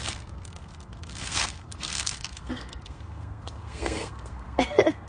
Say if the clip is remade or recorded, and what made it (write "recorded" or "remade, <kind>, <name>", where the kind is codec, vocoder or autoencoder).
remade, codec, SNAC